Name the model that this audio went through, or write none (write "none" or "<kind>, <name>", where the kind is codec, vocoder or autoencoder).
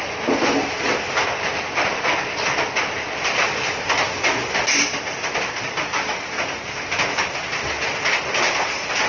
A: none